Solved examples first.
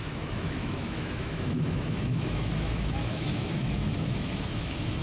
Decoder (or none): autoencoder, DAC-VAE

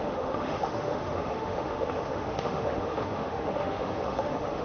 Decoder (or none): autoencoder, DAC-VAE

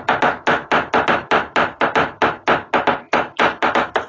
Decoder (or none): none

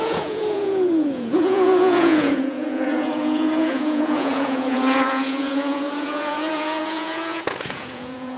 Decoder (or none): vocoder, Vocos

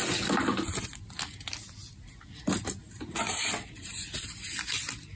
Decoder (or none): none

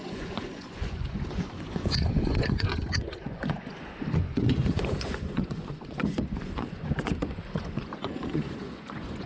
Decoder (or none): vocoder, Vocos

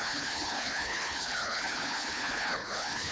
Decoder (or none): codec, HILCodec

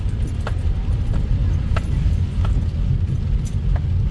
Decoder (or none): none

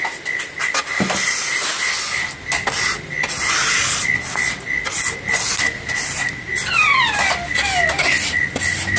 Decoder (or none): none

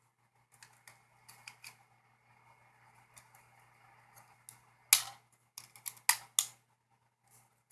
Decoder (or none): none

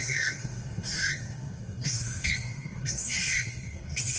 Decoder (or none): codec, SNAC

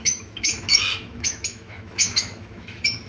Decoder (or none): autoencoder, DAC-VAE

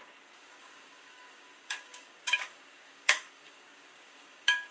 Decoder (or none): codec, DAC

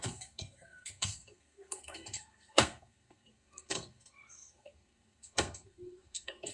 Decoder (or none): codec, SNAC